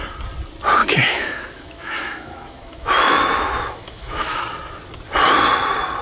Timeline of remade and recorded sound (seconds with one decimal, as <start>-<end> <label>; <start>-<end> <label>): 0.0-0.8 recorded; 0.8-4.4 remade; 4.4-6.0 recorded